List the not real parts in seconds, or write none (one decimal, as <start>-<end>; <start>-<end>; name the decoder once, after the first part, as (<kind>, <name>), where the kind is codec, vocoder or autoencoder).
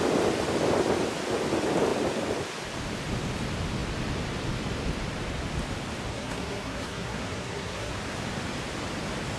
6.1-7.9 (codec, SNAC)